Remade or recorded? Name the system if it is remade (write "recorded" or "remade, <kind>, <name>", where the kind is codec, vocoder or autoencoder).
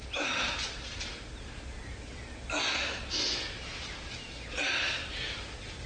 recorded